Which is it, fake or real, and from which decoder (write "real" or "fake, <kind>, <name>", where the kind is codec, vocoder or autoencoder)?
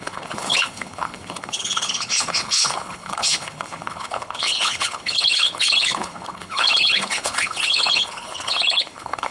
fake, codec, HILCodec